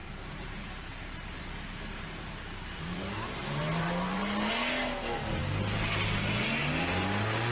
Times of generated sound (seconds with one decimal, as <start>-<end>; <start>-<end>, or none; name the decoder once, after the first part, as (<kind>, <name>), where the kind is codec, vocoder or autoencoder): 0.0-4.5 (vocoder, BigVGAN v2)